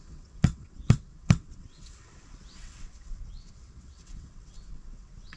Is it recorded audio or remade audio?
remade